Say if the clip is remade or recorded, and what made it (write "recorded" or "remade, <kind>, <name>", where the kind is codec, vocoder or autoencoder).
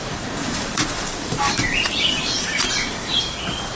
remade, vocoder, BigVGAN v2